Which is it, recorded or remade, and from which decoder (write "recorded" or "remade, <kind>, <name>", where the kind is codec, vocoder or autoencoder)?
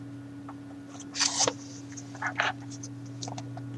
recorded